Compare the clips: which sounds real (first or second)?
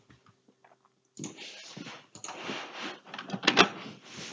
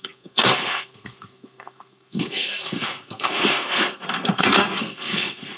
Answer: first